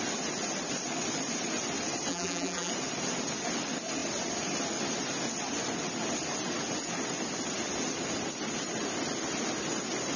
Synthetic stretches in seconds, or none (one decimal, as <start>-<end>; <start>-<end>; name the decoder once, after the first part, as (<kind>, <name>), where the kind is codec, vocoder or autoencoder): 2.1-2.7 (vocoder, BigVGAN v2)